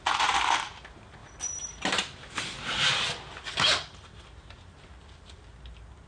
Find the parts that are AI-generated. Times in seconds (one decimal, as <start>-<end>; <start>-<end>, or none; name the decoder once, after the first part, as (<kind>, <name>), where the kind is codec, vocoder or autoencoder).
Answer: none